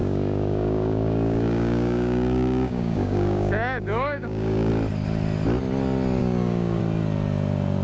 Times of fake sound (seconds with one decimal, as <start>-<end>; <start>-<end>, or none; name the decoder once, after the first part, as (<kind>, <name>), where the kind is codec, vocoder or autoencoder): 0.0-4.7 (codec, DAC); 6.2-6.8